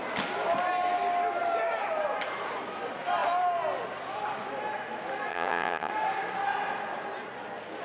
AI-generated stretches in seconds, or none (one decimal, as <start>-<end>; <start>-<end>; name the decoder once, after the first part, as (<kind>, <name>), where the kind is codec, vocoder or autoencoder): 5.3-5.9 (vocoder, HiFi-GAN)